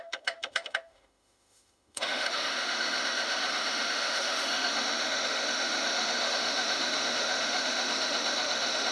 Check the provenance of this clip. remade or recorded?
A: remade